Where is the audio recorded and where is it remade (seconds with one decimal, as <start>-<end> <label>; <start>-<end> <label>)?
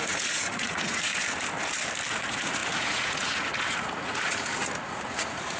0.0-1.1 remade; 1.1-2.1 recorded; 2.1-5.6 remade